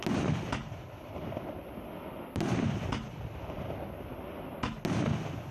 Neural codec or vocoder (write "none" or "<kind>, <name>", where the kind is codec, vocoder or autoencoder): none